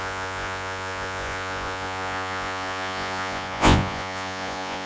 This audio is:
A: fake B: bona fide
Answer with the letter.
A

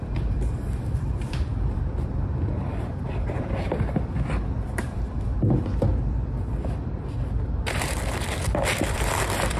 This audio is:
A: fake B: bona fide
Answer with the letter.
A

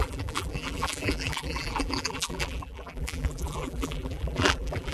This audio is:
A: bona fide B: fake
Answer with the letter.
B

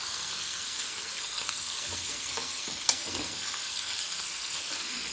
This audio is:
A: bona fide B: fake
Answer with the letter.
B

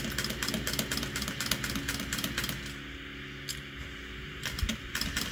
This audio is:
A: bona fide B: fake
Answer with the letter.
A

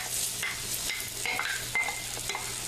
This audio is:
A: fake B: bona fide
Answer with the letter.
B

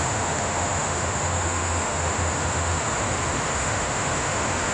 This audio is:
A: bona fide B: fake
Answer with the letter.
B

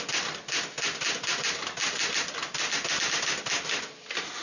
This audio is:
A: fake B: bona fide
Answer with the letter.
B